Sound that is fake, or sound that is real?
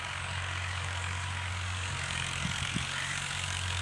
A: fake